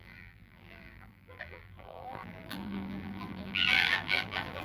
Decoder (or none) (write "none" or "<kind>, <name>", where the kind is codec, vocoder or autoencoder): vocoder, BigVGAN v2